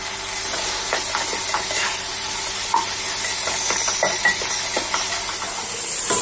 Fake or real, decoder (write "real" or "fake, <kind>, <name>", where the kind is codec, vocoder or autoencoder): real